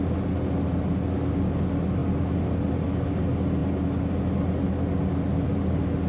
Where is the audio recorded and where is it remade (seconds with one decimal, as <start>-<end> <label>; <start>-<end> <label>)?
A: 0.0-6.1 recorded